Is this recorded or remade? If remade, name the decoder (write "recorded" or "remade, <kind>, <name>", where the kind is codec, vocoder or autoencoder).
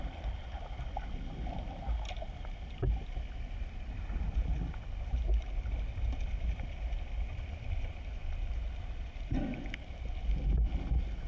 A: recorded